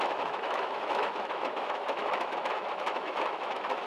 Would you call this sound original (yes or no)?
no